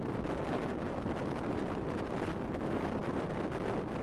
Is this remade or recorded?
remade